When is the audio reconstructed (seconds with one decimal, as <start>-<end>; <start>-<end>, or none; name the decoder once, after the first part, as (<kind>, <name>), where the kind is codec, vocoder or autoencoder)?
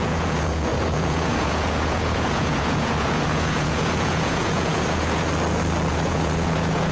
0.0-5.3 (vocoder, Vocos); 5.9-6.9